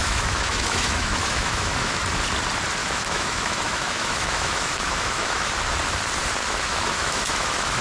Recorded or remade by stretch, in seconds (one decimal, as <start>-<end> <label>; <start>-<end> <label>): 0.0-2.0 remade; 2.0-2.8 recorded; 2.8-5.5 remade; 5.5-6.4 recorded; 6.4-7.8 remade